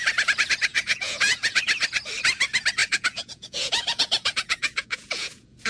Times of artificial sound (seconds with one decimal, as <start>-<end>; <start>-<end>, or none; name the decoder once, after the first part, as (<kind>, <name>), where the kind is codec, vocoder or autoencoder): 0.7-1.6 (vocoder, Vocos); 2.8-5.7